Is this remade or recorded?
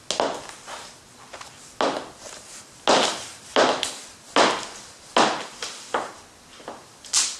recorded